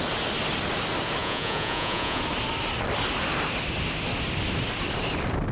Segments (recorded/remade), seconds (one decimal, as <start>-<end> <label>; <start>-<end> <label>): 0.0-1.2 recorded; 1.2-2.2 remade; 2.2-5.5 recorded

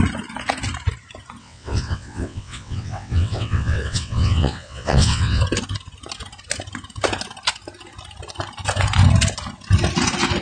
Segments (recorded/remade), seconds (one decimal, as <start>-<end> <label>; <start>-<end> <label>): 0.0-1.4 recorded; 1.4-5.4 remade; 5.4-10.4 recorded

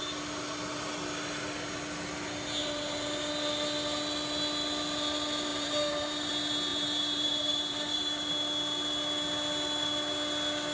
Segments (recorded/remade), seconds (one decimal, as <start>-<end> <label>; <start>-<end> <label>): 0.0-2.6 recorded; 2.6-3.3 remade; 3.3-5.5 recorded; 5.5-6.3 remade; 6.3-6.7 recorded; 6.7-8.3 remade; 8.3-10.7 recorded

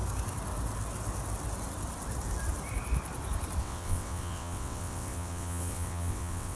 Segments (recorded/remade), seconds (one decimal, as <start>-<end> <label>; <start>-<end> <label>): 0.0-3.6 recorded; 3.6-6.6 remade

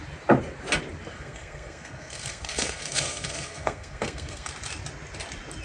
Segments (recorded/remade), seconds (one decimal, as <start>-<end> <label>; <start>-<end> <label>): 0.0-1.1 recorded; 1.1-4.5 remade; 4.5-5.6 recorded